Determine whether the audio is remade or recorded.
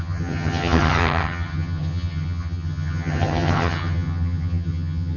remade